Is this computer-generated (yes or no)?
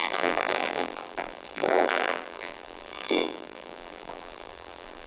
yes